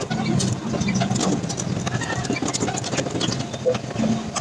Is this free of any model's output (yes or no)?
yes